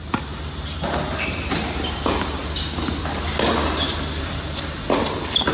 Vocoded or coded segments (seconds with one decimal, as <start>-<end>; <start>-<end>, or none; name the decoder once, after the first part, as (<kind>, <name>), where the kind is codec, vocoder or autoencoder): 0.0-2.4 (vocoder, BigVGAN v2); 4.2-5.5